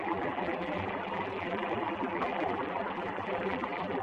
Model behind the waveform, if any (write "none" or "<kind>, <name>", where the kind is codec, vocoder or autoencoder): vocoder, BigVGAN v2